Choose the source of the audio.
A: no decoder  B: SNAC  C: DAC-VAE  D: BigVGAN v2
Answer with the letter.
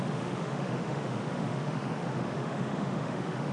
C